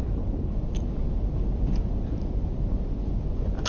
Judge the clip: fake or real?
real